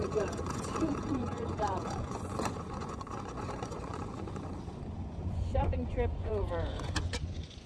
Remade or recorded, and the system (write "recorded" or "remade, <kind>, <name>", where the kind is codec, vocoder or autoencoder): remade, vocoder, Vocos